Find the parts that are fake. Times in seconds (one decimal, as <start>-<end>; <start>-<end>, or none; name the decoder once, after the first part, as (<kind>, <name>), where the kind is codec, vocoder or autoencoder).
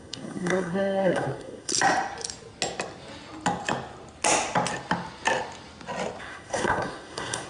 0.0-1.7 (codec, SNAC); 6.2-7.5